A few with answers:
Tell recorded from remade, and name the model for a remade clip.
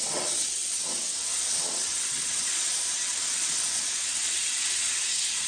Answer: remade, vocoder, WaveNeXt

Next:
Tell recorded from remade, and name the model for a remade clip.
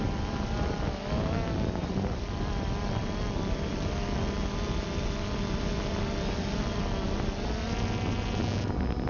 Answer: recorded